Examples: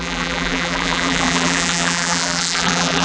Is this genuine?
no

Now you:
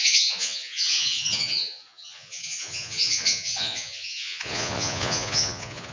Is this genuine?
no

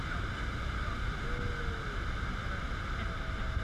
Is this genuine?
yes